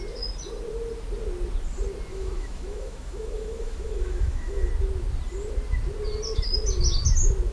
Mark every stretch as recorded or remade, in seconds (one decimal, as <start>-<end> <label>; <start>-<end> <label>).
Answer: 0.0-2.1 recorded; 2.1-4.7 remade; 4.7-7.5 recorded